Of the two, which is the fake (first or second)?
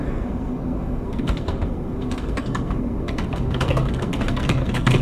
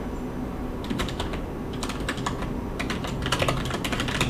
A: first